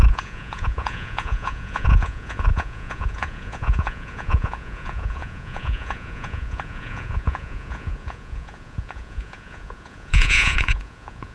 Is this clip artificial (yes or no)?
yes